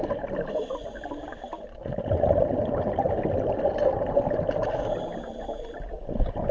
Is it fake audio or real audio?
real